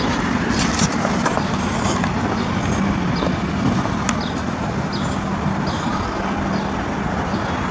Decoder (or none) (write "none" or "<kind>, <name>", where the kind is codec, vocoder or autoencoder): none